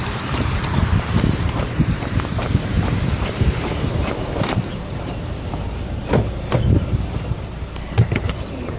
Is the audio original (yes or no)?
no